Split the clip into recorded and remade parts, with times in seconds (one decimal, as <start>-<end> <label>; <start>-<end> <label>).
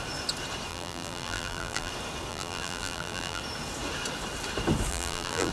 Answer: 0.0-0.7 recorded; 0.7-1.9 remade; 1.9-2.3 recorded; 2.3-3.4 remade; 3.4-4.9 recorded; 4.9-5.5 remade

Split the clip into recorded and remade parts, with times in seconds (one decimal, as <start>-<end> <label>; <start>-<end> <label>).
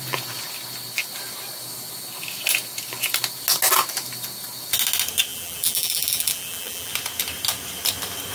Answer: 0.0-5.3 recorded; 5.3-6.9 remade; 6.9-8.3 recorded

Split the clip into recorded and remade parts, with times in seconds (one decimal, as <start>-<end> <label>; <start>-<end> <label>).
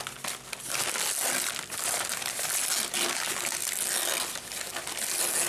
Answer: 0.0-5.5 recorded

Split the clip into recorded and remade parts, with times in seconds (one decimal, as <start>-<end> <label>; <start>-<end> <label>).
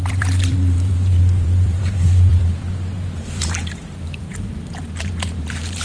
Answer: 0.0-5.8 remade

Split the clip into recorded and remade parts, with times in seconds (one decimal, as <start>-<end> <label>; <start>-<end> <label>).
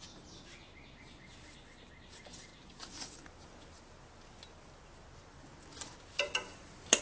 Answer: 0.0-7.0 recorded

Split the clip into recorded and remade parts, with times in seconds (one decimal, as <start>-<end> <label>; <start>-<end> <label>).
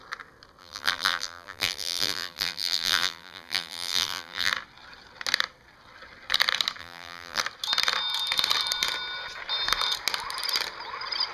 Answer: 0.0-0.6 recorded; 0.6-4.5 remade; 4.5-6.8 recorded; 6.8-7.4 remade; 7.4-11.3 recorded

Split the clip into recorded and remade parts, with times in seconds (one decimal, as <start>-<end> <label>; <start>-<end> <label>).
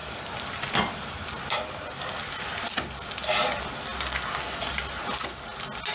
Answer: 0.0-2.9 remade; 2.9-5.9 recorded